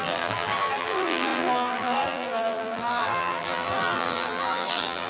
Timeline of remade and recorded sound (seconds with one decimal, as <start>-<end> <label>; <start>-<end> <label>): 0.0-5.1 remade